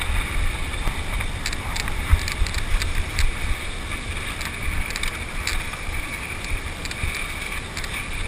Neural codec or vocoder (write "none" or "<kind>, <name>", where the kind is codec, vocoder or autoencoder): none